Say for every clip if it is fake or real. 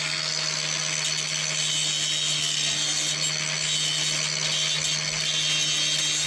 real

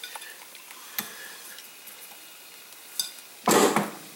real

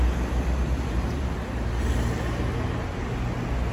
real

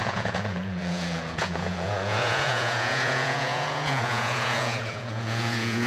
fake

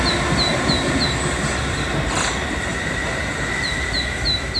real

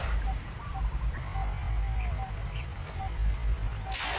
real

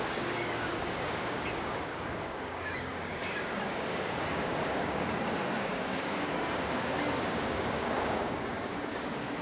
fake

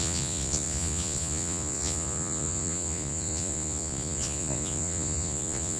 fake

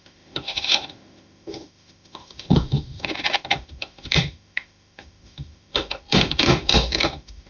fake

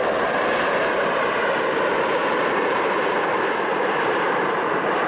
fake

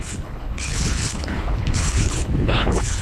fake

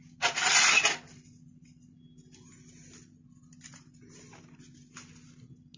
real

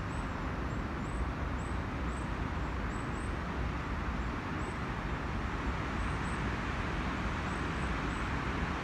real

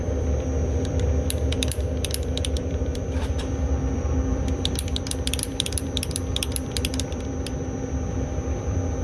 fake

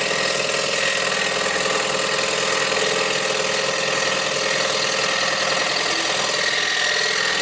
real